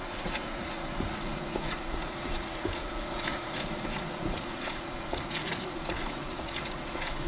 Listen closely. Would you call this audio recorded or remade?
remade